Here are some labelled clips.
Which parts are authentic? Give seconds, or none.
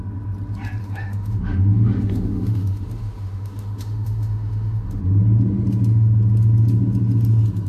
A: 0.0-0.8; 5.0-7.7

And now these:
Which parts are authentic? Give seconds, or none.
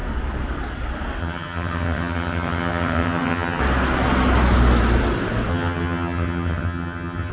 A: 0.0-1.2; 3.6-5.5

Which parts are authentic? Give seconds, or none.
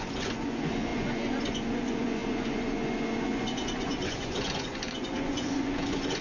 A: none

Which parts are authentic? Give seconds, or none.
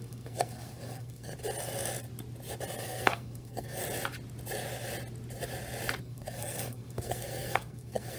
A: 1.3-2.8; 3.8-6.0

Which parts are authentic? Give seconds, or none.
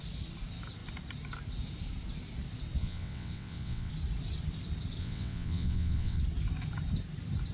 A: 0.0-2.8; 3.9-5.0; 6.2-7.5